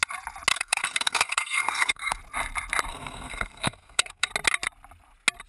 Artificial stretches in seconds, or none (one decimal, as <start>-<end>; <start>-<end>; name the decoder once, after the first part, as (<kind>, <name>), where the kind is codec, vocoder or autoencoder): 0.5-2.2 (codec, SNAC); 2.9-4.3